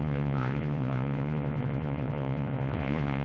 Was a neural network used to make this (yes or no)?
yes